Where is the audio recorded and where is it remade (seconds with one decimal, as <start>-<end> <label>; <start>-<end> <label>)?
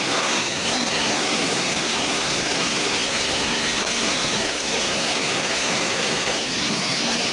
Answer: 0.0-7.3 remade